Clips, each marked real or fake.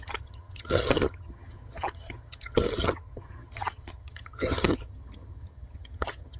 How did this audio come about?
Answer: fake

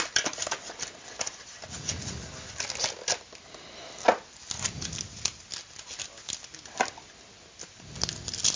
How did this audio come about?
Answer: real